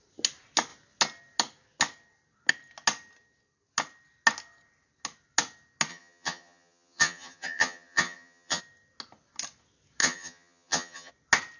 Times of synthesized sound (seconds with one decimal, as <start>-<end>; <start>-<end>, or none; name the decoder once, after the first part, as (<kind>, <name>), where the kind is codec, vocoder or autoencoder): 5.9-8.6 (vocoder, HiFi-GAN); 10.0-11.1